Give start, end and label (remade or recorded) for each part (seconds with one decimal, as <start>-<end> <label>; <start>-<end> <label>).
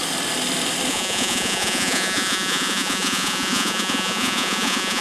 0.0-0.9 recorded; 0.9-5.0 remade